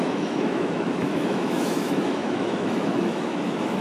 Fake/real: fake